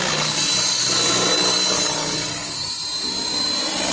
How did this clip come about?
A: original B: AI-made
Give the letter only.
A